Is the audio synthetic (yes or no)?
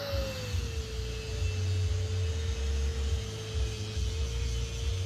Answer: no